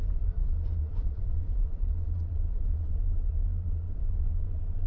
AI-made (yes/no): yes